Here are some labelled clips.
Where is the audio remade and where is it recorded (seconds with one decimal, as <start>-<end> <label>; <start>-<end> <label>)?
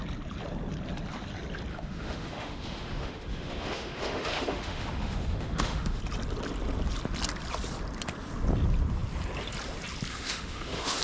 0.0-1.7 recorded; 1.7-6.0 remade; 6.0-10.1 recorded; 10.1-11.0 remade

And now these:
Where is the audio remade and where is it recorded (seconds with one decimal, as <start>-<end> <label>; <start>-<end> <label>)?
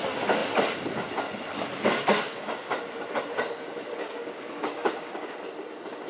0.0-2.1 recorded; 2.1-2.7 remade; 2.7-4.0 recorded; 4.0-5.4 remade; 5.4-6.1 recorded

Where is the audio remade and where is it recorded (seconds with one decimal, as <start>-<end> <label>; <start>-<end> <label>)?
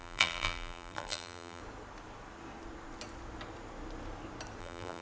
0.0-1.6 remade; 1.6-4.6 recorded; 4.6-5.0 remade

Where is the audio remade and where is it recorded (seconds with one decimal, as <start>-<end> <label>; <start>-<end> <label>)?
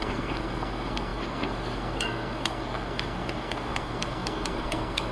0.0-5.1 remade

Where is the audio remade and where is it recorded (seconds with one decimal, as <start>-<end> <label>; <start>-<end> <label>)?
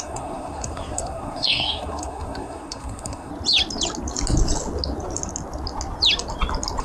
0.0-3.3 remade; 3.3-6.8 recorded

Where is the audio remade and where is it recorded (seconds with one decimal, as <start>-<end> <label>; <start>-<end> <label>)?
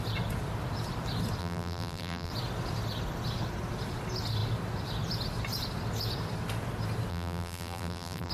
0.0-1.4 recorded; 1.4-2.3 remade; 2.3-7.1 recorded; 7.1-8.3 remade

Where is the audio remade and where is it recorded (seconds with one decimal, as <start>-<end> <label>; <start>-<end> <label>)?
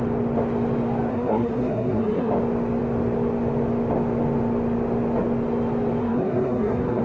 0.0-1.1 recorded; 1.1-2.3 remade; 2.3-6.0 recorded; 6.0-7.0 remade